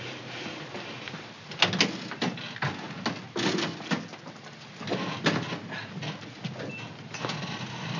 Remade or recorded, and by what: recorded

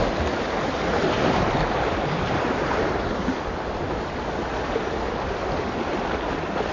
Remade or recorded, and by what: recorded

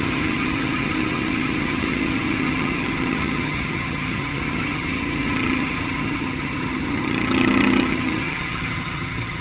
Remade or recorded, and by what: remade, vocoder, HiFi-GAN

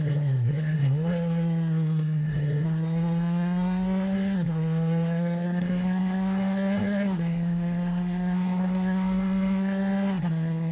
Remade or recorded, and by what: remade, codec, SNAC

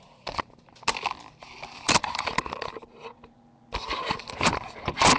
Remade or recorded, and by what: recorded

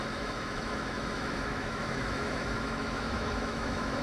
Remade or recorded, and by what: remade, autoencoder, DAC-VAE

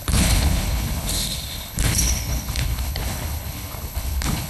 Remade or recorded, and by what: remade, codec, HILCodec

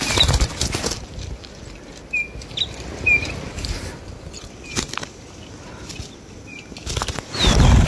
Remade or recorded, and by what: recorded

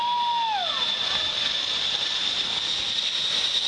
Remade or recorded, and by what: recorded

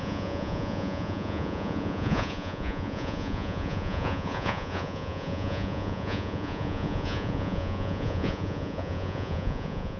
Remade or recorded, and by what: remade, vocoder, Vocos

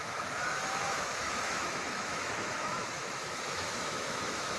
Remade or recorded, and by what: remade, autoencoder, DAC-VAE